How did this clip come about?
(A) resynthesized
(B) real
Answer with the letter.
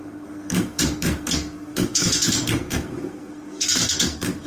A